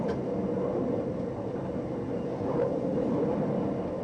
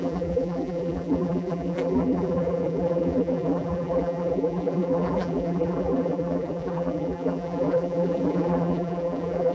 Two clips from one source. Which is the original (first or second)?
first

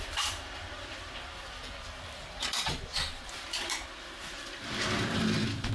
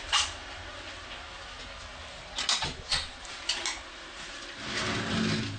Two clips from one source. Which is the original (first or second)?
second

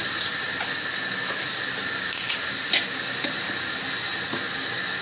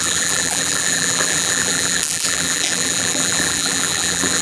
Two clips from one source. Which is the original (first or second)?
first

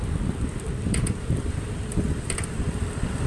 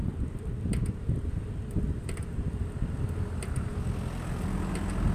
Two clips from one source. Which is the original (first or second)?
second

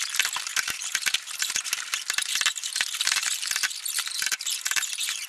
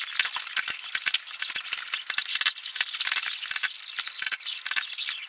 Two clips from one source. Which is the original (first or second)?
second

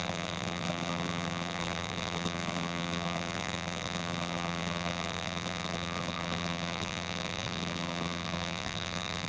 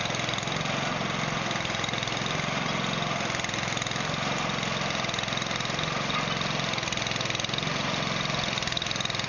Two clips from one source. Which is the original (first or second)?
second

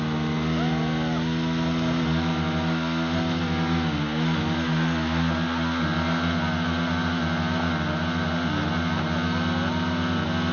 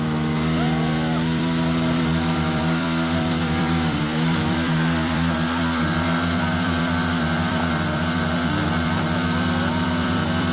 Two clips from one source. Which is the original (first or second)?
first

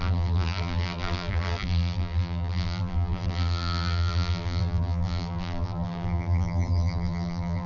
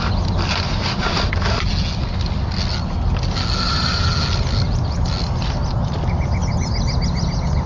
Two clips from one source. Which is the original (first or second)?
second